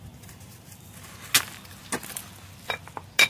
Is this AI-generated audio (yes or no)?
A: no